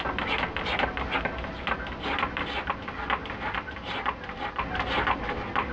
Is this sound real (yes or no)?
yes